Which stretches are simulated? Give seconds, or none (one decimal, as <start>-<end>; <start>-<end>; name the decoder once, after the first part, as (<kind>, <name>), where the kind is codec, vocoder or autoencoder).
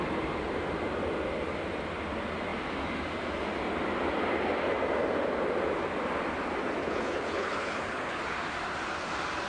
6.8-8.2 (codec, HILCodec)